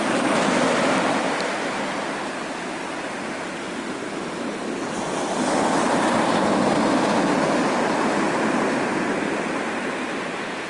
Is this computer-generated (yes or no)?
no